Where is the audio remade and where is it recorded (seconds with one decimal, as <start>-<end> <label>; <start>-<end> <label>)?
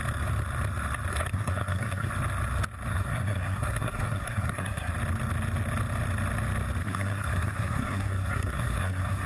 0.0-1.1 recorded; 1.1-2.1 remade; 2.1-2.9 recorded; 2.9-4.9 remade; 4.9-6.8 recorded; 6.8-9.3 remade